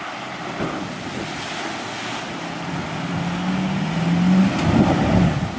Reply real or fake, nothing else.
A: real